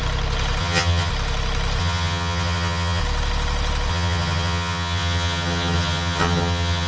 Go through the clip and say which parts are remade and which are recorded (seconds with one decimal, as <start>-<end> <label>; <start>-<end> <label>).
0.0-0.6 recorded; 0.6-1.1 remade; 1.1-1.8 recorded; 1.8-3.0 remade; 3.0-3.9 recorded; 3.9-6.9 remade